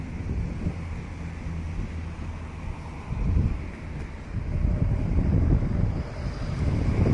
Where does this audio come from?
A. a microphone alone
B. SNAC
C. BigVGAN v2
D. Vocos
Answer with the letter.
A